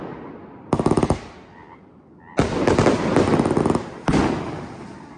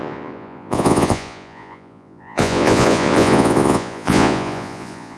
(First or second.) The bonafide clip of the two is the first